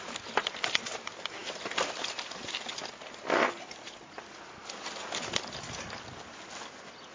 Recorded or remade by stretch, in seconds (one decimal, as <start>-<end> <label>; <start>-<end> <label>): 0.0-7.1 recorded